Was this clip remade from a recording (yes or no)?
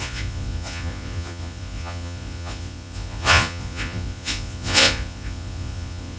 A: yes